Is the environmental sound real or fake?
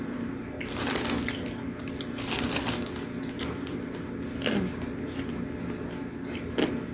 real